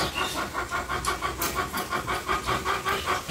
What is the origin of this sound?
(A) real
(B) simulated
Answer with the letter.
A